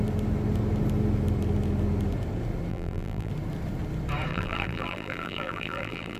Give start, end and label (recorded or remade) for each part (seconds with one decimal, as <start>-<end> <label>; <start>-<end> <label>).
0.0-2.7 recorded; 2.7-3.3 remade; 3.3-4.3 recorded; 4.3-6.2 remade